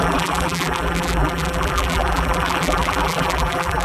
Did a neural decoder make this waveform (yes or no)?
yes